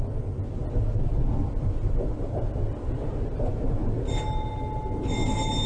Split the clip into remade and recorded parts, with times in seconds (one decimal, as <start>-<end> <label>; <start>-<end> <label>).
0.0-5.7 recorded